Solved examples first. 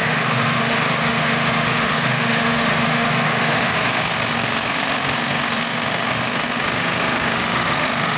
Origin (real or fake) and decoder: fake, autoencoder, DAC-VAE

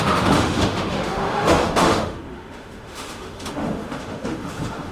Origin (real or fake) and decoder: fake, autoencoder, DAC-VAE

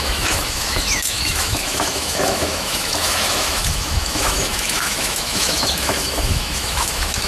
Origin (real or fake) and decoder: fake, autoencoder, DAC-VAE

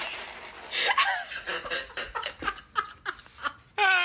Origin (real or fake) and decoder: real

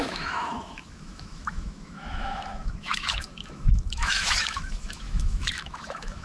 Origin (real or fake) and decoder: fake, autoencoder, DAC-VAE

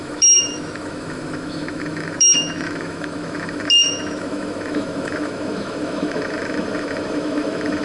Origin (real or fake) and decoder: fake, autoencoder, DAC-VAE